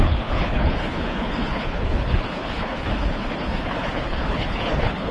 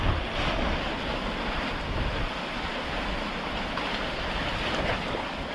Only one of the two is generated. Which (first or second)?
first